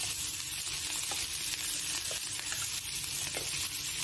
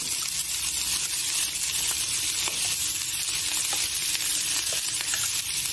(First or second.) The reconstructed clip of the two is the second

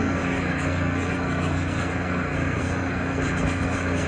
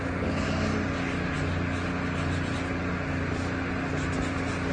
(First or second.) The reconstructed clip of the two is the first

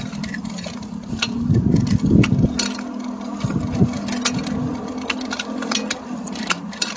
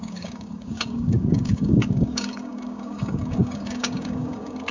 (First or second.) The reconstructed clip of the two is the second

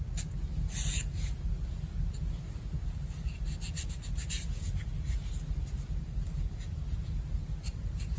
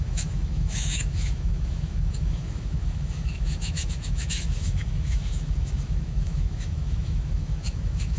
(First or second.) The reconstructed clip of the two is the second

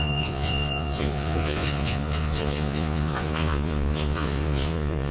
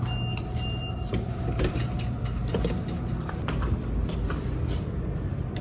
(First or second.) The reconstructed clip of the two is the first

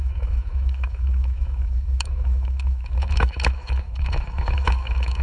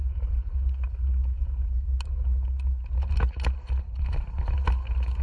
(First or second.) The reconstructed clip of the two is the first